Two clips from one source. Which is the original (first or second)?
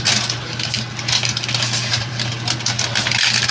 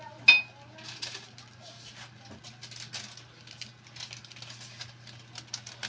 second